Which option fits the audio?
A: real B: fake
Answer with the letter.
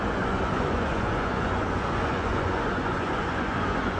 B